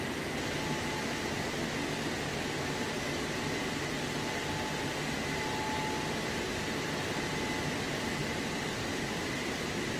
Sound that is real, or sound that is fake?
real